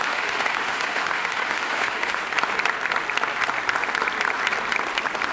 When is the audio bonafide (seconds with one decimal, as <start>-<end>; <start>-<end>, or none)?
2.2-5.3